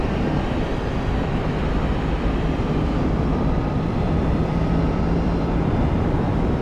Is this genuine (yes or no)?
no